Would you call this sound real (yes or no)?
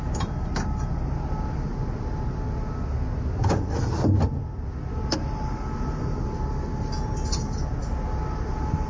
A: yes